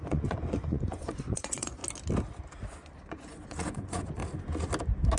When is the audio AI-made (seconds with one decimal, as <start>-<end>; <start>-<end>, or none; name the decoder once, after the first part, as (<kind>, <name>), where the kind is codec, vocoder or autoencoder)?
0.0-1.8 (vocoder, Vocos); 3.1-4.2